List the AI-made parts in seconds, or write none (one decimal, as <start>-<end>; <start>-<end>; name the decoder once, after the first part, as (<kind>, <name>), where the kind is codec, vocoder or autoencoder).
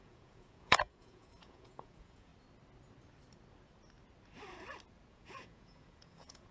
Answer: 0.0-2.3 (vocoder, Vocos); 5.1-6.5